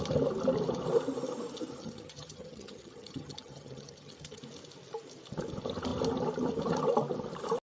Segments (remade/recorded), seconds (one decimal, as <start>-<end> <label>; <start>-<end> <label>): 0.0-1.8 recorded; 1.8-4.4 remade; 4.4-7.8 recorded